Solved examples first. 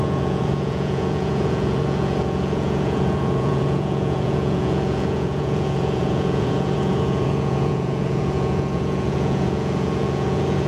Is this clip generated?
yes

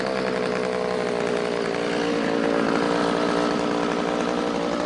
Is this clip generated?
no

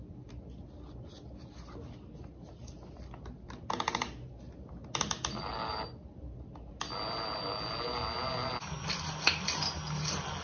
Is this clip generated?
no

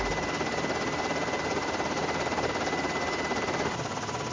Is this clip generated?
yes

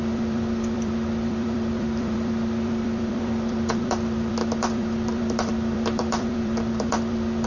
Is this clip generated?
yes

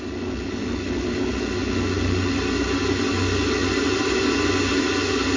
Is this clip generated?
no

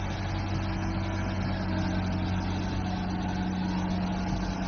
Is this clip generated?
no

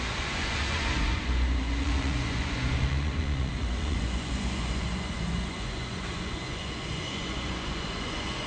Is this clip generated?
yes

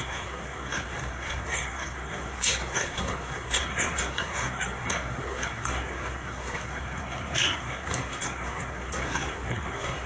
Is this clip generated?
yes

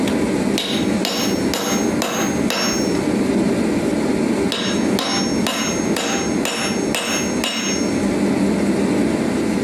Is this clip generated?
no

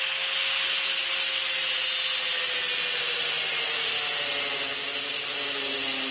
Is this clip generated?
no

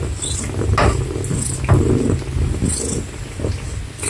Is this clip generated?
no